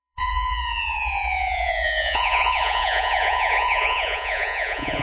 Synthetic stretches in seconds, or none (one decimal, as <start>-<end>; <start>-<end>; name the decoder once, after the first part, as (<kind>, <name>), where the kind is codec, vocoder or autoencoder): 0.0-5.0 (vocoder, Vocos)